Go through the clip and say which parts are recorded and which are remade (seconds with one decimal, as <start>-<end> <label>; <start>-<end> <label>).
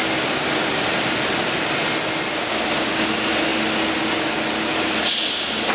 0.0-5.7 recorded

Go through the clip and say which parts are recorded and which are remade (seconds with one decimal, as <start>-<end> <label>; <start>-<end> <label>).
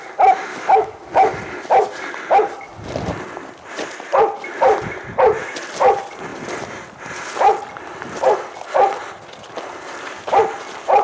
0.0-0.5 recorded; 0.5-1.1 remade; 1.1-11.0 recorded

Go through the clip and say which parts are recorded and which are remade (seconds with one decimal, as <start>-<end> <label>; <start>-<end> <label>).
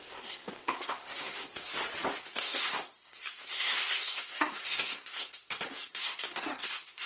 0.0-1.7 remade; 1.7-2.2 recorded; 2.2-7.1 remade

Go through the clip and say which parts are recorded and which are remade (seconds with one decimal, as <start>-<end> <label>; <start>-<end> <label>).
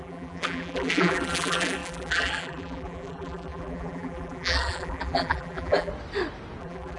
0.0-5.9 remade; 5.9-6.6 recorded; 6.6-7.0 remade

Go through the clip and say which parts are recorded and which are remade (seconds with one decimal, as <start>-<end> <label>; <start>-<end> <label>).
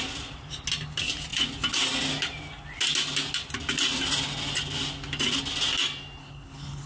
0.0-6.2 recorded; 6.2-6.9 remade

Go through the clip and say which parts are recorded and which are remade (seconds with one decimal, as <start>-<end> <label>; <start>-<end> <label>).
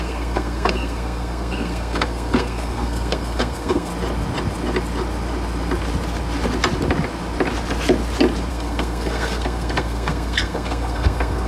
0.0-3.9 remade; 3.9-8.5 recorded; 8.5-11.5 remade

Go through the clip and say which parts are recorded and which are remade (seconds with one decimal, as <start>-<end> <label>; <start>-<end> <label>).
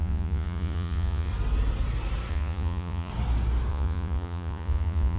0.0-1.3 remade; 1.3-2.3 recorded; 2.3-3.1 remade; 3.1-3.7 recorded; 3.7-5.2 remade